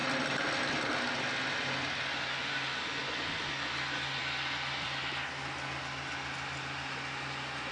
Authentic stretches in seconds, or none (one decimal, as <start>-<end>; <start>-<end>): 0.0-7.7